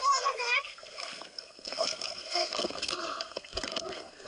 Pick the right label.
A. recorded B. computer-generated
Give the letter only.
B